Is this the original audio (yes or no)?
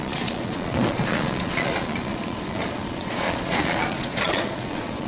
no